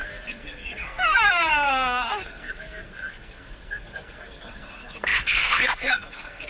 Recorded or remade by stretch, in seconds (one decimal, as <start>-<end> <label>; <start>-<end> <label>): 0.0-6.5 remade